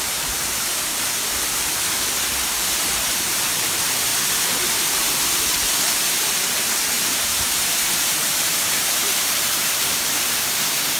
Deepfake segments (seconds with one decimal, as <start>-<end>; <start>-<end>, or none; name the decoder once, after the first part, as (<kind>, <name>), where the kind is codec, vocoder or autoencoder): 0.0-0.9 (vocoder, BigVGAN v2); 1.4-11.0